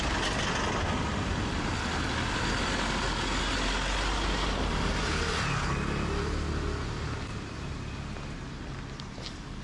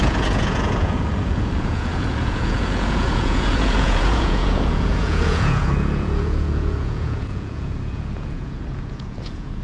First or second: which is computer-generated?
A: second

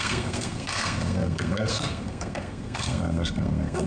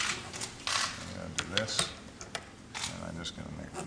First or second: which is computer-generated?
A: first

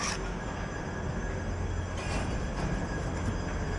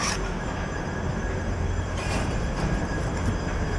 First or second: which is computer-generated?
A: second